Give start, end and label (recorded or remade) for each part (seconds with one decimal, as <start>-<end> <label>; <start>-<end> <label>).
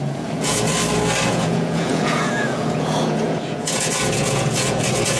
0.0-0.7 remade; 0.7-1.3 recorded; 1.3-5.2 remade